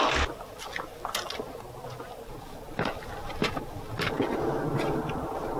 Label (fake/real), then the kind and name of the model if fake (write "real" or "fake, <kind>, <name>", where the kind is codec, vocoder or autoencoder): real